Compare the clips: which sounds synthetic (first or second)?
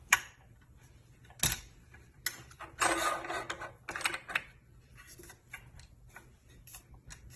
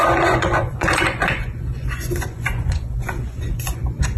second